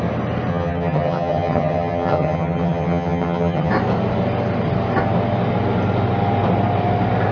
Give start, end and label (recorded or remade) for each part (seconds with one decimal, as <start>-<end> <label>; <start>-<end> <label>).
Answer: 0.0-0.5 recorded; 0.5-3.7 remade; 3.7-7.3 recorded